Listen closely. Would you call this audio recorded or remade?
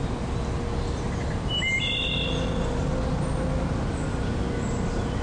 recorded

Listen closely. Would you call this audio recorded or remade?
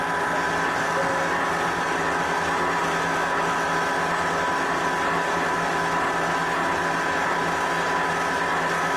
recorded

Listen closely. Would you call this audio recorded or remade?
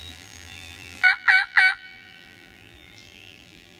remade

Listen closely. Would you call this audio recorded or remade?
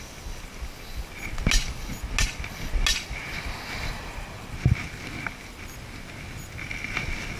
recorded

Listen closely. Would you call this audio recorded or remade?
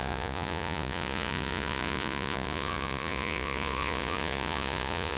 remade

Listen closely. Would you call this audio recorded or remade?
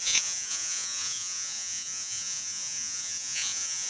remade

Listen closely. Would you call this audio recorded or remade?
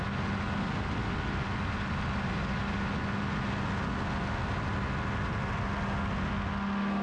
recorded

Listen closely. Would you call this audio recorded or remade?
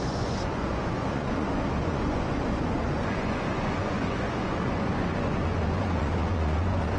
remade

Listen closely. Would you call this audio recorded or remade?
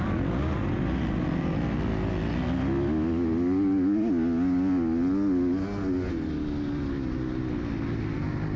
recorded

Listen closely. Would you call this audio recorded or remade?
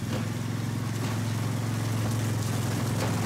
recorded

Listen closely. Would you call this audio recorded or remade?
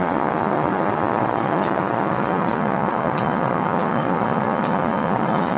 remade